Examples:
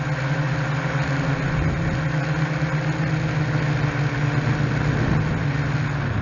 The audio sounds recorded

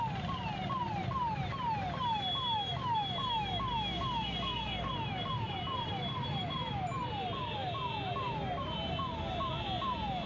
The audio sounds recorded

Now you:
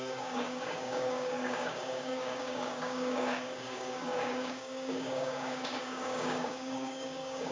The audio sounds remade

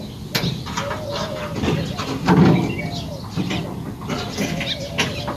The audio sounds recorded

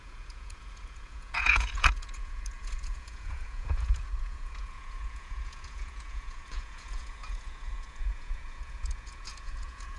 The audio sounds remade